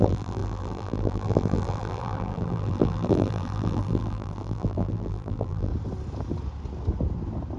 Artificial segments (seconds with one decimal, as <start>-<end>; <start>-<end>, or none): 0.0-5.7